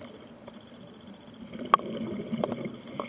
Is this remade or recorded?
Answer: recorded